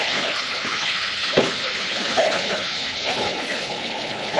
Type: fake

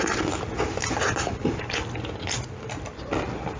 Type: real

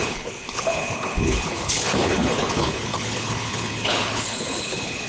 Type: fake